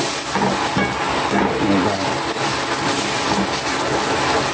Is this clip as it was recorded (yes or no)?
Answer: yes